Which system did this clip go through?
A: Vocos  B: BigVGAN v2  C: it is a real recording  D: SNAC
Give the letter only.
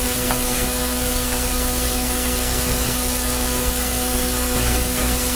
D